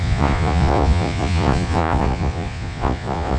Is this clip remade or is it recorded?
remade